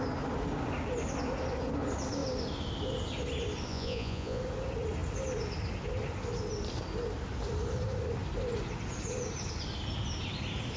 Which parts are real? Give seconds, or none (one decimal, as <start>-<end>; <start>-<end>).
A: 0.0-3.7; 4.4-10.8